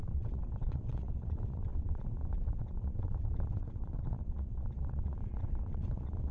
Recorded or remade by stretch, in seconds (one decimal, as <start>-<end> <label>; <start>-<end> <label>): 0.0-6.3 remade